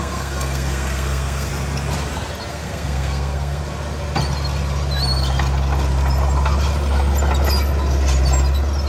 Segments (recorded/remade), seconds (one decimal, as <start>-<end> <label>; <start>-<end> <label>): 0.0-1.5 remade; 1.5-2.5 recorded; 2.5-3.6 remade; 3.6-8.9 recorded